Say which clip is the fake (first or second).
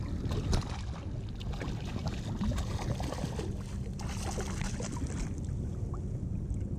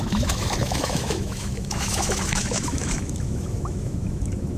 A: second